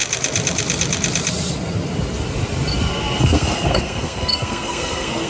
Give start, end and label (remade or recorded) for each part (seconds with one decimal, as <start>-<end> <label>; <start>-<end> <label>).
0.0-3.2 recorded; 3.2-5.3 remade